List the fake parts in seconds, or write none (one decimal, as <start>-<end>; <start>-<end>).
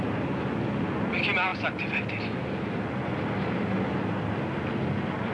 none